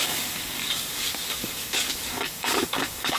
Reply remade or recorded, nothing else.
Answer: remade